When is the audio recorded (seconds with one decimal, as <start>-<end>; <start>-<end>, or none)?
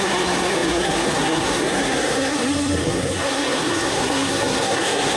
none